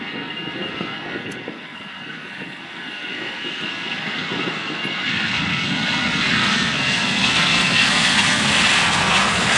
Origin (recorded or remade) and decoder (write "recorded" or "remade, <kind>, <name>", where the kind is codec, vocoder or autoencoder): remade, codec, SNAC